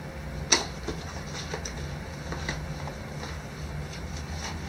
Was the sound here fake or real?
real